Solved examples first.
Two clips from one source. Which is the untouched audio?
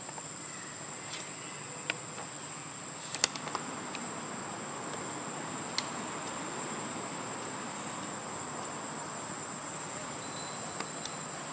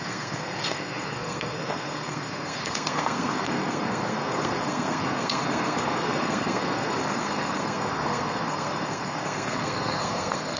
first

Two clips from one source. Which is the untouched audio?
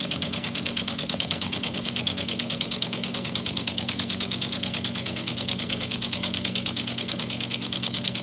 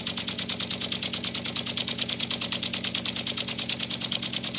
second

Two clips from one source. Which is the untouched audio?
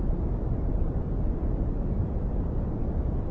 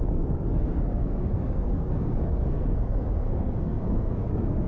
first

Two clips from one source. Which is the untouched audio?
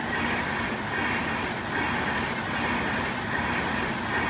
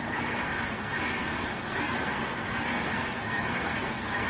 first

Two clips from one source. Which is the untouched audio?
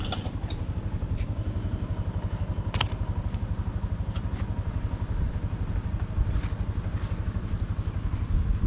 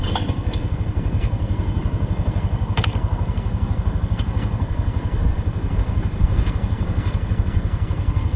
first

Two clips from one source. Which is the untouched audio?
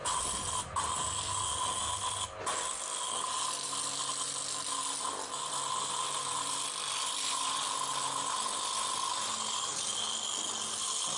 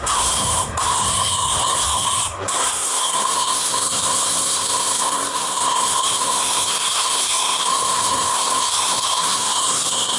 first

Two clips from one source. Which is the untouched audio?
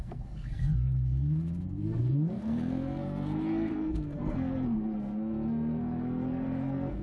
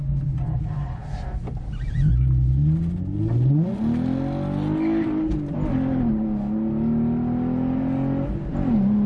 second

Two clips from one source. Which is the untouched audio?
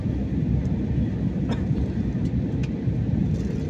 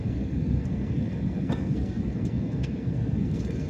first